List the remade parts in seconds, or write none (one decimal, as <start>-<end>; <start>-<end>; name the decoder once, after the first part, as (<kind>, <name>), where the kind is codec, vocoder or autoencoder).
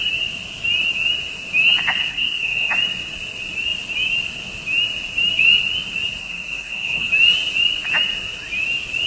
2.0-2.7 (codec, SNAC); 6.2-7.1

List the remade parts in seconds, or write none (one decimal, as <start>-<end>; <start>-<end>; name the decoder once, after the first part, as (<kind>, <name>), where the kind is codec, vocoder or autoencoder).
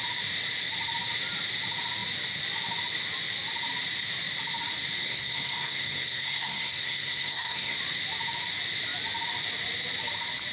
5.0-7.8 (codec, SNAC)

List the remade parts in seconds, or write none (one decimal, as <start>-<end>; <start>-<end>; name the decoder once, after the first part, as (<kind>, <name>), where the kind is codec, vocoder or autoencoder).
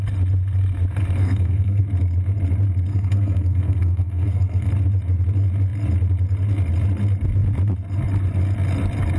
1.2-1.8 (codec, SNAC); 2.9-4.7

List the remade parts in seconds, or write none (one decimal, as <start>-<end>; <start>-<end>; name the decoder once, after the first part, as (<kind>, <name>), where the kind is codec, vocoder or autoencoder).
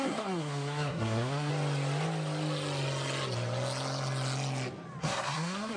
0.0-1.5 (codec, SNAC); 5.0-5.8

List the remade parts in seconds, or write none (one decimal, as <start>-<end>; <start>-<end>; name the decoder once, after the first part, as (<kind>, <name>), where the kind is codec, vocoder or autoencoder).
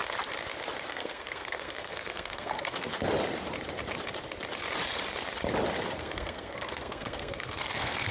0.9-2.9 (codec, SNAC); 6.0-8.1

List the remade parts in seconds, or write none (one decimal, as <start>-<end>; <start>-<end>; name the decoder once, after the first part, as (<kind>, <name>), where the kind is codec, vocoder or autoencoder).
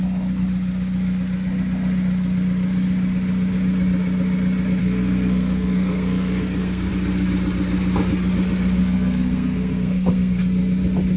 4.8-6.9 (codec, SNAC); 8.8-10.4